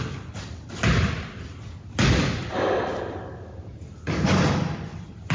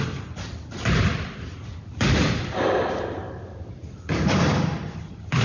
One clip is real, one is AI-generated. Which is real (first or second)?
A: first